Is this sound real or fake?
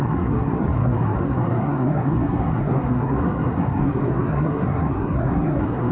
fake